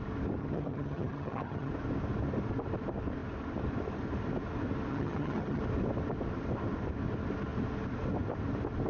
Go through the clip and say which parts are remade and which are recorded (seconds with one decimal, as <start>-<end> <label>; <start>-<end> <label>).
0.0-0.4 recorded; 0.4-1.7 remade; 1.7-4.9 recorded; 4.9-5.6 remade; 5.6-8.9 recorded